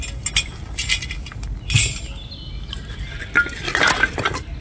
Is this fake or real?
real